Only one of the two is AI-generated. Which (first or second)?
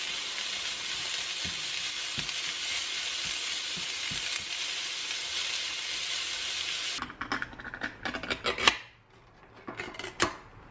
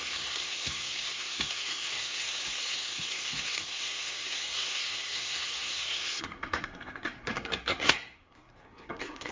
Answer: second